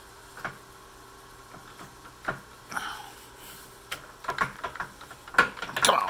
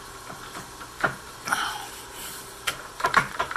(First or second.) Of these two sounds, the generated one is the second